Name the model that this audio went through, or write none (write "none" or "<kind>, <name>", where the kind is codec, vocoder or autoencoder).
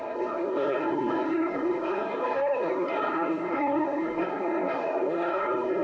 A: codec, SNAC